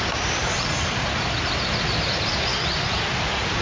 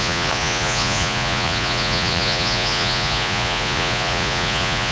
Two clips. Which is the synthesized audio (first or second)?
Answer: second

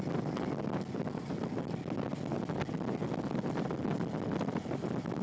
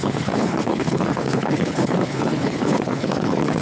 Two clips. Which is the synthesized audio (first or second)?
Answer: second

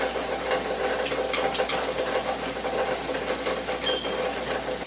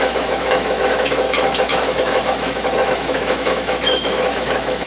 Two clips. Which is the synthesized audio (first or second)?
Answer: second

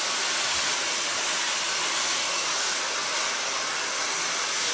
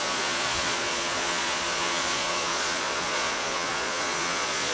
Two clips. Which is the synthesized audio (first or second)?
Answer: second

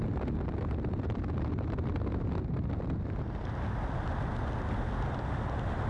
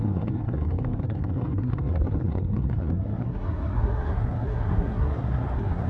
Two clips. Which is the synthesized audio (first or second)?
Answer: second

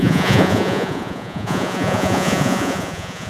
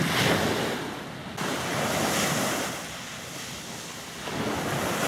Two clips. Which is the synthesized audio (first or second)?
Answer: first